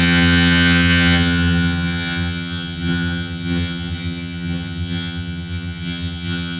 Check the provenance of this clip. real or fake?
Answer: fake